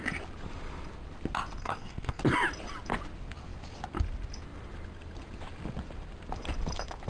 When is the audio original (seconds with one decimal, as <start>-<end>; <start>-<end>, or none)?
0.0-1.6; 2.2-7.1